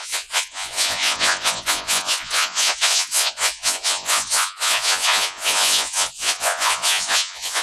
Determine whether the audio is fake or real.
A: fake